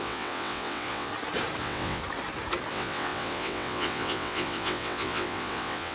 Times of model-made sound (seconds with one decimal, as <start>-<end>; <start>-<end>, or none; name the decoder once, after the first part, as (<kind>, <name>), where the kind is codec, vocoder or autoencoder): 0.0-1.1 (vocoder, WaveNeXt); 1.6-2.0; 2.7-5.9